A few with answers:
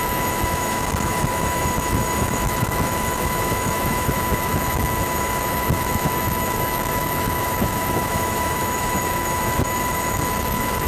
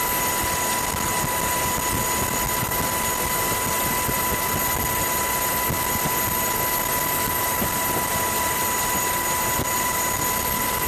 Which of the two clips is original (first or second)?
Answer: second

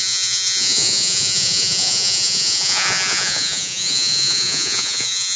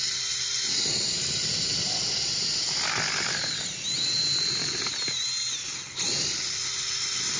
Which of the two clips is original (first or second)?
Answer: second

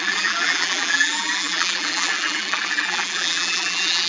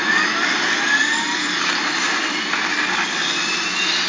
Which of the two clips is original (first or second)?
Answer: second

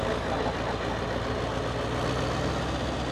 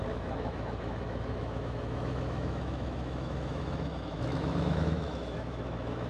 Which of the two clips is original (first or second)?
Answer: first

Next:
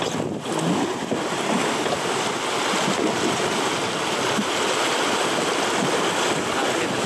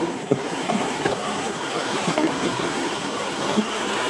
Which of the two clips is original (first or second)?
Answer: first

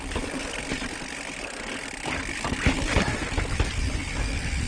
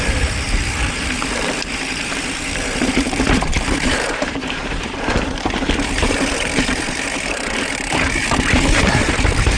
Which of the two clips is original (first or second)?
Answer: first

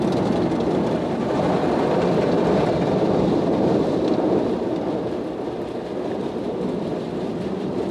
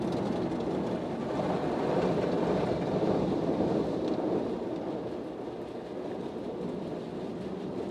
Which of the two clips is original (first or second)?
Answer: second